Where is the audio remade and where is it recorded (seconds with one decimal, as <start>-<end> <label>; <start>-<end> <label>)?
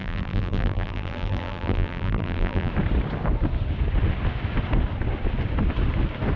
0.0-2.7 remade; 2.7-6.4 recorded